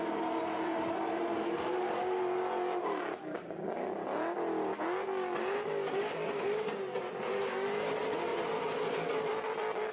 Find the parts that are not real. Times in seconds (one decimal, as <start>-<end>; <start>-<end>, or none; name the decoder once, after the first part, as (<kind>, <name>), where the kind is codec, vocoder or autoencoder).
none